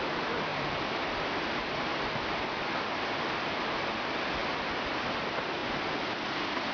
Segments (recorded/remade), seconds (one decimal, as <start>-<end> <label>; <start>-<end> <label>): 0.0-6.7 recorded